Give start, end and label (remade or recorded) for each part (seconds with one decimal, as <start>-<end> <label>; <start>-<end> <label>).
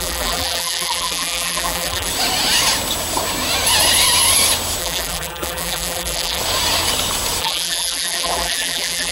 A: 0.0-2.1 remade; 2.1-4.8 recorded; 4.8-6.4 remade; 6.4-7.4 recorded; 7.4-9.1 remade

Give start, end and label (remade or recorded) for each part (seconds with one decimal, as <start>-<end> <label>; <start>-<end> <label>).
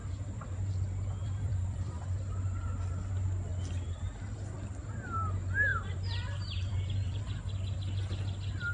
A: 0.0-0.7 remade; 0.7-1.2 recorded; 1.2-2.0 remade; 2.0-5.7 recorded; 5.7-7.2 remade; 7.2-8.7 recorded